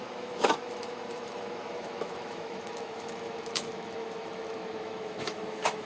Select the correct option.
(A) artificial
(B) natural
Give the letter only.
A